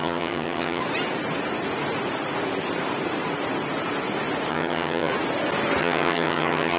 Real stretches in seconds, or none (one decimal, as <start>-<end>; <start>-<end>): 0.8-4.5; 5.1-5.8